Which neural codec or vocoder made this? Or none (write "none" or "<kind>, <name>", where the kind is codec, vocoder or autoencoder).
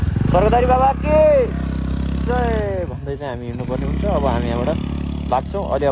none